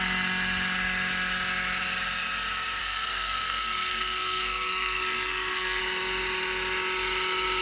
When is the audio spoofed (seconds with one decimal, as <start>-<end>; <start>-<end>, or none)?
2.8-5.8